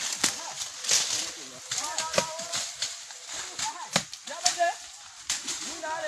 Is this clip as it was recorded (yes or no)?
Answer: yes